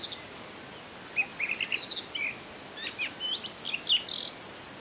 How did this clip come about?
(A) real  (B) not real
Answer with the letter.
A